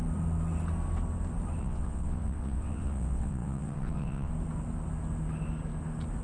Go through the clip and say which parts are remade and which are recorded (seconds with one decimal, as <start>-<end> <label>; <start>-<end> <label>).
0.0-1.6 recorded; 1.6-4.3 remade; 4.3-6.2 recorded